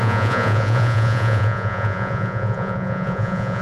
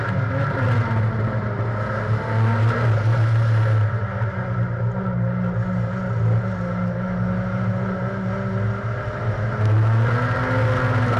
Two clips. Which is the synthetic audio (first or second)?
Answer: first